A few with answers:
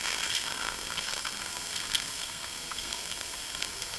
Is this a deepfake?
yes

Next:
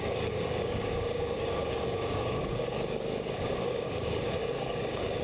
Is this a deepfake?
yes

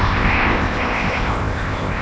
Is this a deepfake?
yes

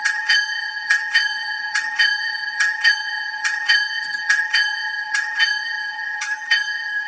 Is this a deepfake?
yes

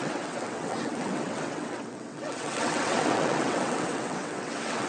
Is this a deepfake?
yes